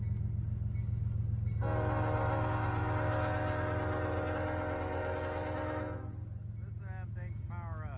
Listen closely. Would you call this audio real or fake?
real